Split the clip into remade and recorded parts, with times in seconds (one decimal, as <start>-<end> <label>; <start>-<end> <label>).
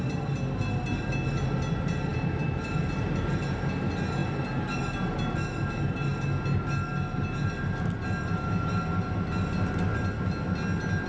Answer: 0.0-11.1 recorded